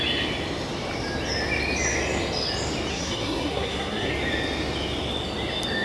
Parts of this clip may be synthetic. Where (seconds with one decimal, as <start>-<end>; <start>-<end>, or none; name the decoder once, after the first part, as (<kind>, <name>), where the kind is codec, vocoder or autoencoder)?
2.9-4.1 (codec, SNAC)